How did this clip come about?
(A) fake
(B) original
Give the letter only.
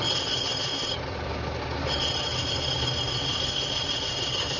B